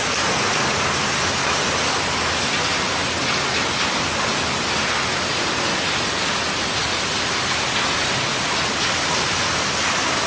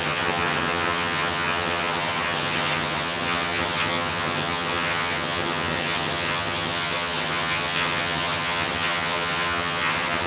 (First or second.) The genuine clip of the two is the first